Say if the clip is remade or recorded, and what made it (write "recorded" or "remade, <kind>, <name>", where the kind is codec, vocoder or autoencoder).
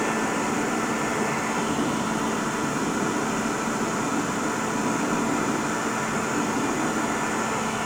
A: recorded